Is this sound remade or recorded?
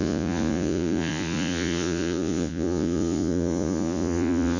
remade